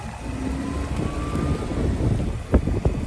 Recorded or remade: recorded